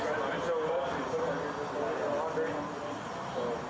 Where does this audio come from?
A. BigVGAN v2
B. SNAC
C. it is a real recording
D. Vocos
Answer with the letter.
C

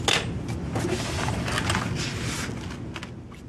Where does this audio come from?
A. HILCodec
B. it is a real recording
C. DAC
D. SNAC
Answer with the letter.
B